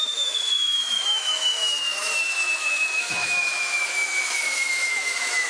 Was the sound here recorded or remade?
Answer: remade